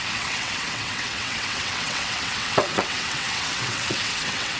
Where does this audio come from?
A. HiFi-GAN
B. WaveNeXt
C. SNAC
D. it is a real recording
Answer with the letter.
B